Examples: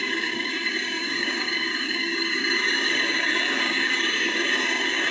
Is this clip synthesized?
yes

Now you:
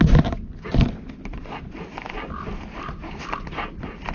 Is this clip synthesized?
no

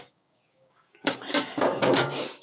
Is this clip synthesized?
yes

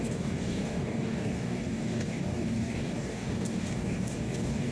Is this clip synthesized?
yes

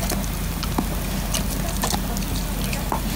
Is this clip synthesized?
no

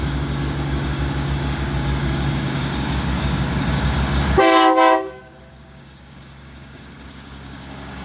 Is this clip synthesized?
yes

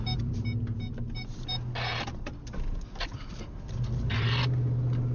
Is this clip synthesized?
no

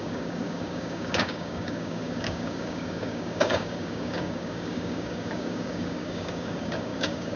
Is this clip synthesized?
yes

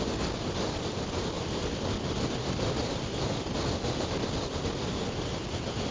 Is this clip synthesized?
no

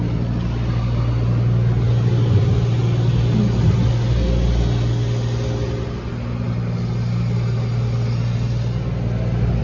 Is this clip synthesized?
no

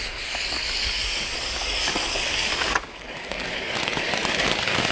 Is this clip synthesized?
yes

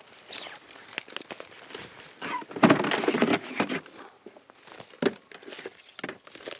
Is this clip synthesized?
no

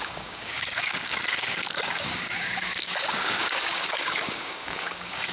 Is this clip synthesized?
yes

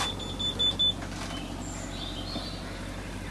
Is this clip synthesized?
no